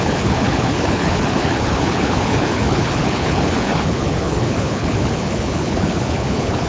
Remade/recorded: remade